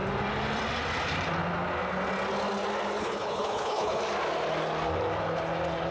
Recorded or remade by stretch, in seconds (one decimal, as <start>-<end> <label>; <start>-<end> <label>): 0.0-3.0 recorded; 3.0-4.0 remade; 4.0-5.9 recorded